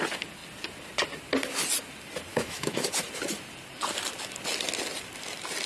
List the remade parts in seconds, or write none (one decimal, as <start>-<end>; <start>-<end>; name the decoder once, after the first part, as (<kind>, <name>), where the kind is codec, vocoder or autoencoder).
2.3-2.9 (autoencoder, DAC-VAE)